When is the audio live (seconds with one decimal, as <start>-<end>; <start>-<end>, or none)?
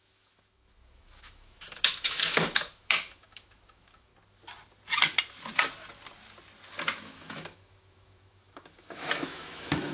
4.1-6.8